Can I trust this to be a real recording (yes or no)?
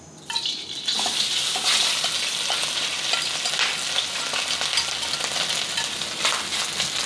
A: yes